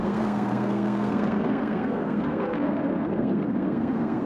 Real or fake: fake